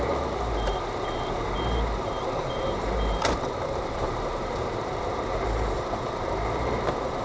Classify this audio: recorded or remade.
remade